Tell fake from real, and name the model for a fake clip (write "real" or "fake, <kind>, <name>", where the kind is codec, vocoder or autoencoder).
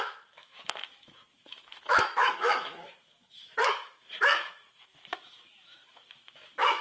fake, autoencoder, DAC-VAE